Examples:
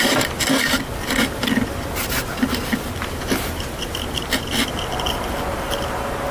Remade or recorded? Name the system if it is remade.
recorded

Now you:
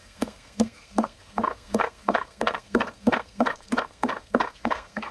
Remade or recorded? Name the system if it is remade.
remade, codec, SNAC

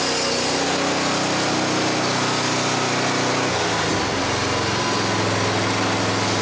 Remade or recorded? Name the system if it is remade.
recorded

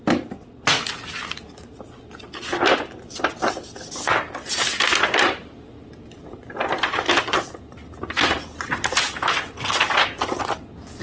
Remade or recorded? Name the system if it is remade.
recorded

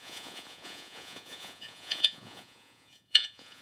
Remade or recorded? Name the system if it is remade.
remade, vocoder, Vocos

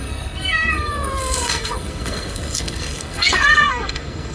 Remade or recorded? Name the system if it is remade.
remade, codec, SNAC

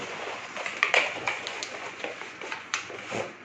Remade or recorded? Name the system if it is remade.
remade, vocoder, Vocos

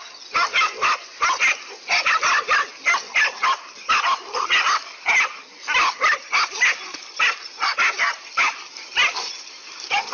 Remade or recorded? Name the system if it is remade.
recorded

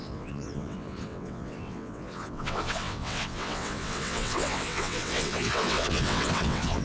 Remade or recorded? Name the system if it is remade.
remade, vocoder, WaveNeXt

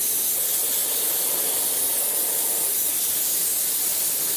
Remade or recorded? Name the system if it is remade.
recorded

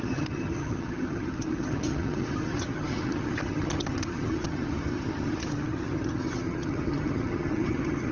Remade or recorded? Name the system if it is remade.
remade, vocoder, HiFi-GAN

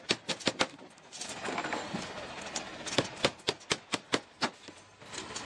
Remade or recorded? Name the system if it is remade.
recorded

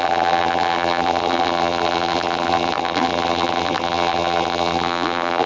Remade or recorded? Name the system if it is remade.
remade, vocoder, BigVGAN v2